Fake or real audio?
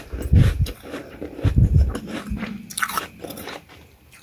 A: real